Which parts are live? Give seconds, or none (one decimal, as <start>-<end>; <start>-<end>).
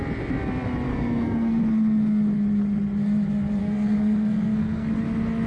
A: 0.0-0.9; 1.6-3.6; 4.9-5.5